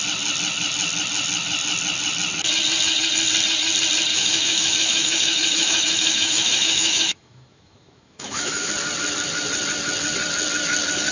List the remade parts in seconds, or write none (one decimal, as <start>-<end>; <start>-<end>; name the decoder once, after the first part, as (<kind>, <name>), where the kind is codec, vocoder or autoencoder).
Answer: 4.1-8.7 (autoencoder, DAC-VAE)